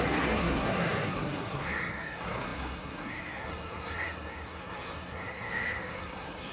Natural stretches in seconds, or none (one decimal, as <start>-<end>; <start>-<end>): none